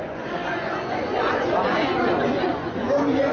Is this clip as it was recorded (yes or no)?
no